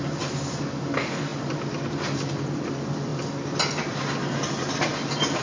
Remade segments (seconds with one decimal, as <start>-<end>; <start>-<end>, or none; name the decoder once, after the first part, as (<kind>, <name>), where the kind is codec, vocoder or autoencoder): none